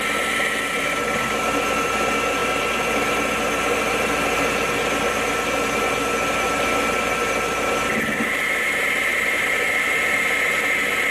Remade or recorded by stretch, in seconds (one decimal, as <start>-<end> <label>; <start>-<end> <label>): 0.0-9.1 recorded; 9.1-10.1 remade; 10.1-11.1 recorded